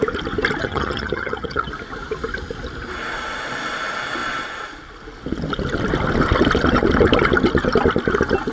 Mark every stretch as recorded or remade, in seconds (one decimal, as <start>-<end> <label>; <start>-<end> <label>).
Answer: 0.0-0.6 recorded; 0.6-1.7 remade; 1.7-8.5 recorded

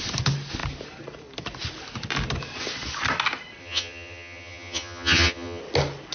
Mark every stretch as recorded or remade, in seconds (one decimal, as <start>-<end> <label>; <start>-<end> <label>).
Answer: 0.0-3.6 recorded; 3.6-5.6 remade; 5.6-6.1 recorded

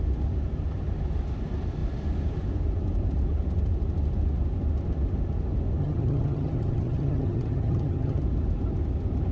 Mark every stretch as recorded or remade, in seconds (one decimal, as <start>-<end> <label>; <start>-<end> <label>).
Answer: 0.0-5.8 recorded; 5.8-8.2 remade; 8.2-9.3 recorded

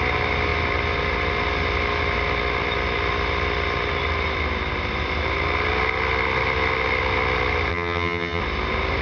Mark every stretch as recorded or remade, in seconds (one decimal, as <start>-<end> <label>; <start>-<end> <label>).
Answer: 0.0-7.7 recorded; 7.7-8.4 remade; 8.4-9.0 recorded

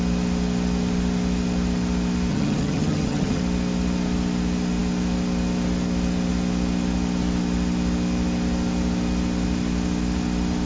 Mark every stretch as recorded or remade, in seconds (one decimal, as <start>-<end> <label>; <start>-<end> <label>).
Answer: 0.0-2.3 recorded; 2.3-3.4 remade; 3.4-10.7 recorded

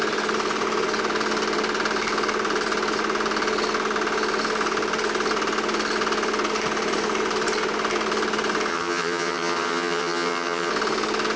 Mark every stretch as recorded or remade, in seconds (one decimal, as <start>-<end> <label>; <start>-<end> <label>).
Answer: 0.0-8.7 recorded; 8.7-10.7 remade; 10.7-11.4 recorded